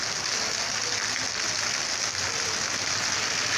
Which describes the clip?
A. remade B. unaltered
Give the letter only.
B